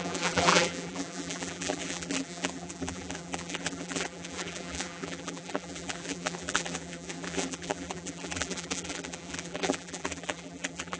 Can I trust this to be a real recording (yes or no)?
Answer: no